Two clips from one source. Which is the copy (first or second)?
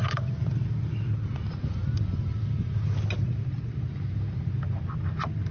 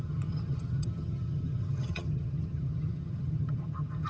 second